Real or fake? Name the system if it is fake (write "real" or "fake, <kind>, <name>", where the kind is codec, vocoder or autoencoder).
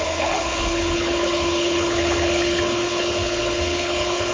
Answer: fake, codec, HILCodec